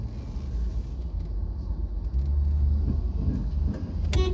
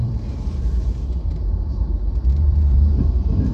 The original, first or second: first